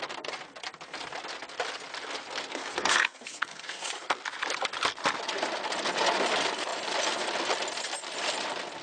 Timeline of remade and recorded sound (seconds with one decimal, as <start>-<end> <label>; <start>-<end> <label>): 0.0-2.5 recorded; 2.5-3.9 remade; 3.9-8.8 recorded